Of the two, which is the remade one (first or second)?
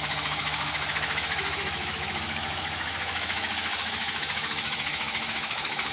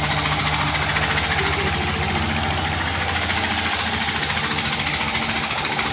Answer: first